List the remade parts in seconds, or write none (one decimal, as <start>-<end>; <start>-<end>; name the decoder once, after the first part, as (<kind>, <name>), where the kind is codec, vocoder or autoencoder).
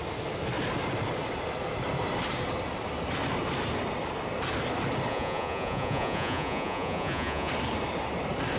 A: 5.1-7.5 (vocoder, Vocos)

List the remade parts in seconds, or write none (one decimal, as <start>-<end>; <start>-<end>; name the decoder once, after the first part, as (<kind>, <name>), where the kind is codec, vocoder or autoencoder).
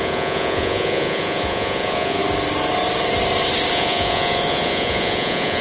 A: 0.0-2.2 (vocoder, Vocos); 3.7-5.6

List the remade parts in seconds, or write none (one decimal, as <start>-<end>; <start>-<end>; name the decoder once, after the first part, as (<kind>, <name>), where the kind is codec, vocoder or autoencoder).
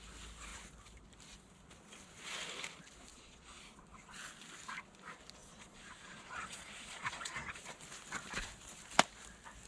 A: 3.1-3.6 (vocoder, Vocos); 5.4-7.6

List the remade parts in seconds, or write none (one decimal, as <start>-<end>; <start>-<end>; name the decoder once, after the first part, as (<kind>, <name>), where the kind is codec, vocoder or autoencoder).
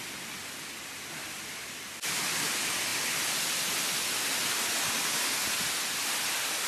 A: 0.0-2.9 (vocoder, BigVGAN v2); 4.5-6.7